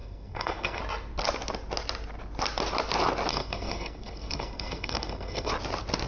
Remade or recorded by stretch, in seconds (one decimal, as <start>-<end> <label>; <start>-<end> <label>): 0.0-0.8 remade; 0.8-3.3 recorded; 3.3-5.5 remade; 5.5-6.1 recorded